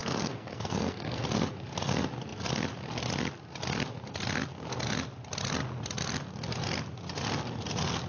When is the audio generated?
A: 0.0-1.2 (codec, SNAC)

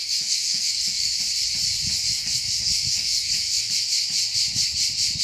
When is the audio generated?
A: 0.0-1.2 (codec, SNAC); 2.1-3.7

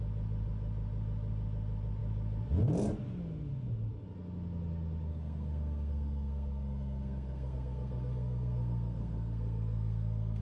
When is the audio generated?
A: 5.1-10.4 (codec, SNAC)